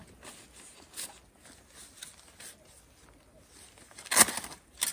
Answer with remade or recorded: recorded